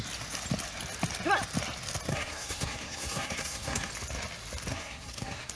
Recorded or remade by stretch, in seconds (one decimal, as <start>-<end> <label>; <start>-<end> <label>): 0.0-2.1 recorded; 2.1-3.9 remade; 3.9-4.7 recorded; 4.7-5.5 remade